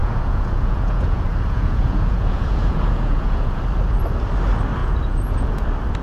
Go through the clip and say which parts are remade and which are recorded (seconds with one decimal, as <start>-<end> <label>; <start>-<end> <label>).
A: 0.0-3.6 remade; 3.6-4.8 recorded; 4.8-5.6 remade; 5.6-6.0 recorded